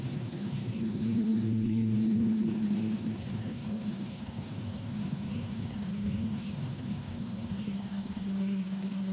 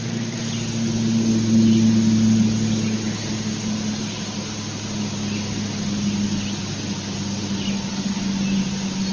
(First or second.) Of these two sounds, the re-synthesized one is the first